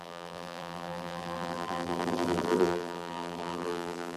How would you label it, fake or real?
fake